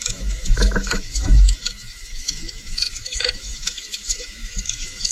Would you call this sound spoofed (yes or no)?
yes